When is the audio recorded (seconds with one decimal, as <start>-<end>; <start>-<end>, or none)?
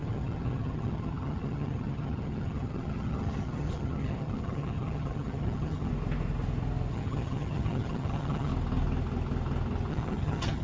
5.9-6.9; 8.5-9.9